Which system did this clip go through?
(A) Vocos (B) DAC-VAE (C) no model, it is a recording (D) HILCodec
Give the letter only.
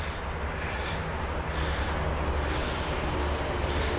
C